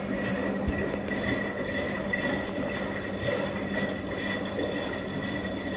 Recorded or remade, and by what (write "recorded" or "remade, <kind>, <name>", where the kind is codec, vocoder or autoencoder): recorded